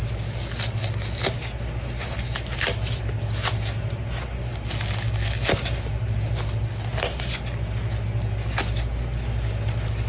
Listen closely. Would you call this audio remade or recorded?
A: recorded